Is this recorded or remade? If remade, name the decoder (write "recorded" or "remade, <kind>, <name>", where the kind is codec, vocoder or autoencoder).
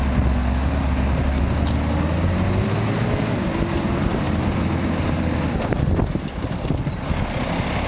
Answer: recorded